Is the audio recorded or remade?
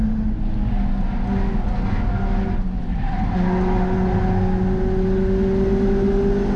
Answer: recorded